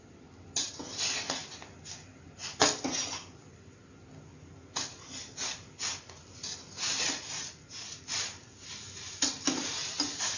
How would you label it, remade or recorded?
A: recorded